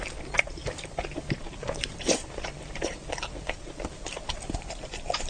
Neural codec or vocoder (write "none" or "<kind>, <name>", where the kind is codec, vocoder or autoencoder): vocoder, BigVGAN v2